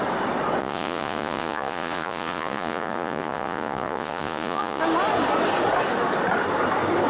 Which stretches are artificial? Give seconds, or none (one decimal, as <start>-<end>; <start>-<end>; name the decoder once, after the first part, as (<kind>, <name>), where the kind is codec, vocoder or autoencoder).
0.6-4.8 (vocoder, Vocos)